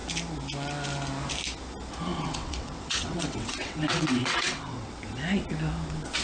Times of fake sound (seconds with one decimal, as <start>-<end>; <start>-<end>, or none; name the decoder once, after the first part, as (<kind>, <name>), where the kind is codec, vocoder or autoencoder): 2.1-4.9 (vocoder, WaveNeXt)

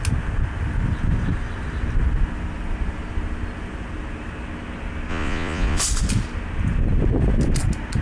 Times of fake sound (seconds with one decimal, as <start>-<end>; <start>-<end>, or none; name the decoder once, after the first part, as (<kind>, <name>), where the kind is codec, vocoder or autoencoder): 5.1-5.8 (vocoder, Vocos)

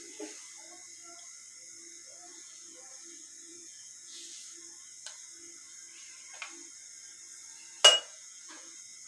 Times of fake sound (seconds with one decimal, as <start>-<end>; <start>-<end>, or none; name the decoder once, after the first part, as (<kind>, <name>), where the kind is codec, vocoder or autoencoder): 2.3-2.9 (vocoder, Vocos); 3.5-4.2; 7.9-8.7